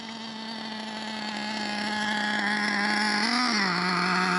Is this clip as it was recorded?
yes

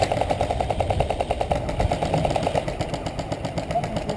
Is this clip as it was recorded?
yes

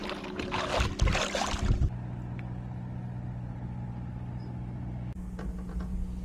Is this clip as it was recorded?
yes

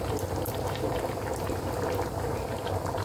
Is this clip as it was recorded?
yes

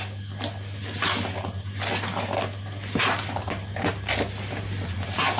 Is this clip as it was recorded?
yes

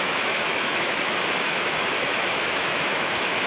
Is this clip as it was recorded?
no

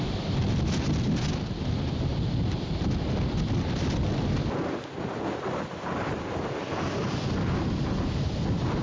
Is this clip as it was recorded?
yes